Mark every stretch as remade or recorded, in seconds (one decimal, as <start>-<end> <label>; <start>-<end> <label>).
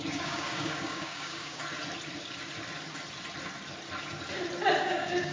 0.0-1.6 remade; 1.6-4.8 recorded; 4.8-5.3 remade